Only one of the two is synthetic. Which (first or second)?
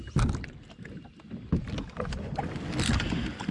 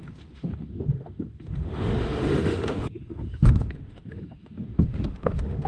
second